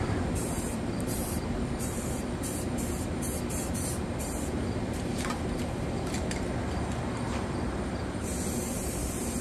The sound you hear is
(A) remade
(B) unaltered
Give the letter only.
A